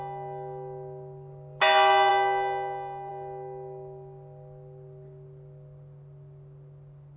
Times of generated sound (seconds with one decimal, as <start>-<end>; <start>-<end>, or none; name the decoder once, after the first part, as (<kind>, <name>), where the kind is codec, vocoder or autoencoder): none